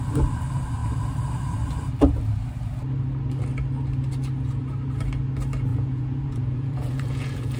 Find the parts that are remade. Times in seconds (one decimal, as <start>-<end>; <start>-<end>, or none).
5.7-7.6